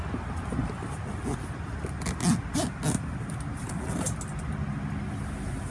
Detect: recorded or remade recorded